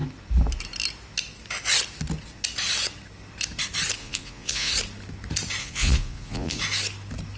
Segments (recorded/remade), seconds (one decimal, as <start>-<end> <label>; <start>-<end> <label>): 0.0-4.0 recorded; 4.0-4.7 remade; 4.7-5.6 recorded; 5.6-6.6 remade; 6.6-7.4 recorded